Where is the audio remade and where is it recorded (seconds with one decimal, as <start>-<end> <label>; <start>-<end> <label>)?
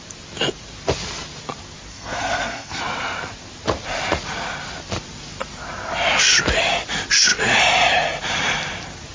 0.0-1.9 recorded; 1.9-2.8 remade; 2.8-9.1 recorded